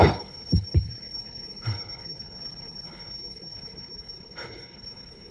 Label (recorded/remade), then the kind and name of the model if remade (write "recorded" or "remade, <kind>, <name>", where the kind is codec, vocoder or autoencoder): remade, codec, HILCodec